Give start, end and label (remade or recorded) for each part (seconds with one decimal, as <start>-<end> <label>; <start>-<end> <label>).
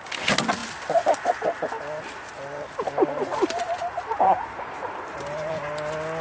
0.0-3.3 recorded; 3.3-5.7 remade; 5.7-6.2 recorded